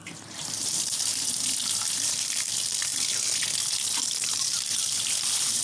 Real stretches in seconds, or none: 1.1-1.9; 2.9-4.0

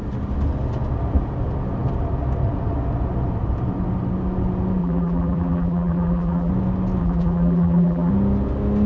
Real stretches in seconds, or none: 0.0-4.8; 6.5-7.0; 8.1-8.9